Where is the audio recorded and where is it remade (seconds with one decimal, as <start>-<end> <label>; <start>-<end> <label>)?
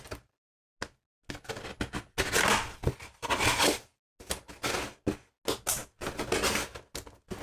0.0-7.4 recorded